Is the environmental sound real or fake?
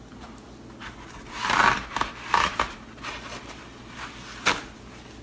real